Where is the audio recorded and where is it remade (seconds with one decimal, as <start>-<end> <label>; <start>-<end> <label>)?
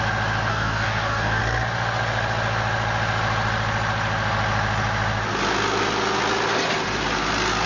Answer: 0.0-0.5 recorded; 0.5-1.4 remade; 1.4-7.7 recorded